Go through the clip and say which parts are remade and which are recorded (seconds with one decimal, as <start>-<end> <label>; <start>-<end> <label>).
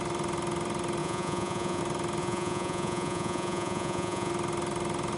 0.0-1.0 recorded; 1.0-1.8 remade; 1.8-2.2 recorded; 2.2-4.3 remade; 4.3-5.2 recorded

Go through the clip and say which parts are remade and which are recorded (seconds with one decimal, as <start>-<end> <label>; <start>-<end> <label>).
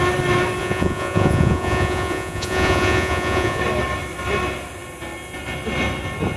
0.0-0.6 recorded; 0.6-3.6 remade; 3.6-6.4 recorded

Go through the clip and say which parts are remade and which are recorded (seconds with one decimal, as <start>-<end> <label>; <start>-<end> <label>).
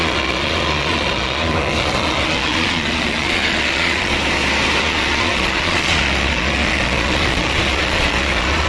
0.0-4.1 remade; 4.1-4.8 recorded; 4.8-8.7 remade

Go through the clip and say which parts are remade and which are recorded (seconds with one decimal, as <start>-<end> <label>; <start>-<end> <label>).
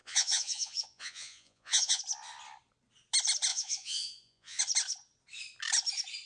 0.0-2.0 remade; 2.0-3.5 recorded; 3.5-4.6 remade; 4.6-6.3 recorded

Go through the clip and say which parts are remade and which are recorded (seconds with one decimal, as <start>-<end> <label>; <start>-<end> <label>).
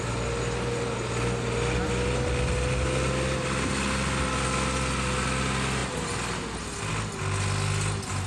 0.0-8.3 recorded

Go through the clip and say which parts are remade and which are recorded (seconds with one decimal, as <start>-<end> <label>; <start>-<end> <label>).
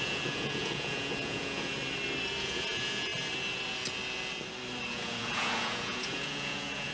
0.0-1.7 remade; 1.7-2.4 recorded; 2.4-3.1 remade; 3.1-4.9 recorded; 4.9-6.9 remade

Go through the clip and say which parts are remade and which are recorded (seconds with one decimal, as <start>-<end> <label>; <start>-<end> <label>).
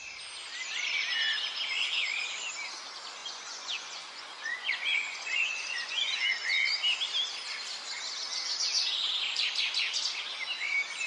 0.0-3.2 recorded; 3.2-6.1 remade; 6.1-11.1 recorded